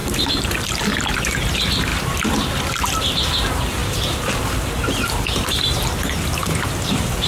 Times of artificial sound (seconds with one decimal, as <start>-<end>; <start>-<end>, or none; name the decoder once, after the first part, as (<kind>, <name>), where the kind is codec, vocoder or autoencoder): 1.9-2.6 (vocoder, BigVGAN v2)